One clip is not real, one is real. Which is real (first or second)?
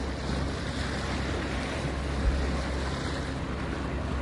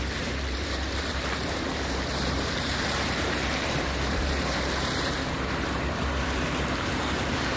first